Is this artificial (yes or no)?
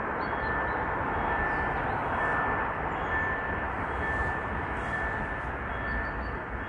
no